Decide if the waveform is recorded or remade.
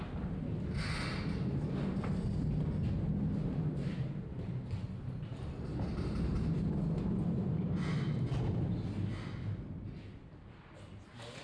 recorded